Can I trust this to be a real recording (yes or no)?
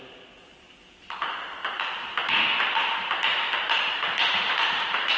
yes